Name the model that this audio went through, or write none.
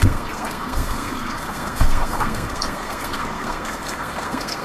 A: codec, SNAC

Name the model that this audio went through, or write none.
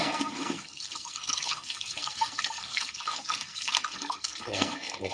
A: codec, SNAC